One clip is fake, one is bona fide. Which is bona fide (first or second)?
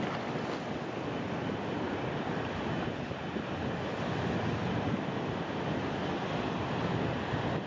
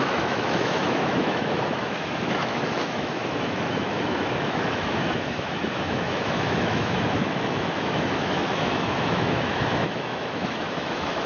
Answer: first